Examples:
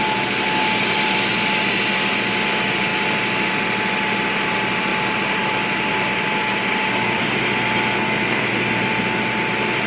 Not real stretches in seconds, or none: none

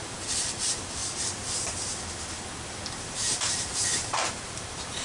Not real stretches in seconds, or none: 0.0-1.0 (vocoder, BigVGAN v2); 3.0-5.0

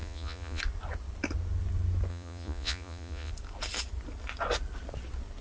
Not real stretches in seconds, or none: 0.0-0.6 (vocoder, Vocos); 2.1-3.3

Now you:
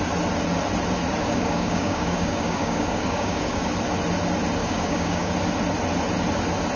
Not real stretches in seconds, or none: 1.2-3.7 (codec, DAC); 4.6-5.3